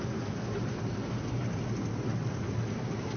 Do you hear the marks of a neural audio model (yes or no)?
no